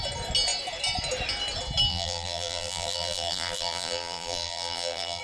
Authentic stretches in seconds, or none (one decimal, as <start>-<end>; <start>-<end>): 0.0-1.9